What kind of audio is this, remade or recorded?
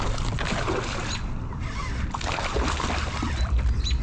recorded